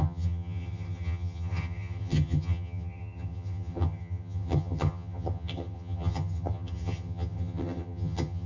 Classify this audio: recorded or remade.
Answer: remade